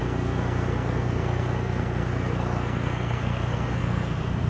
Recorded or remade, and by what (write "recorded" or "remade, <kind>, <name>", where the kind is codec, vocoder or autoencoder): remade, codec, SNAC